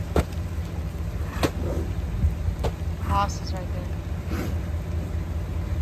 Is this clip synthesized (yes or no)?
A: no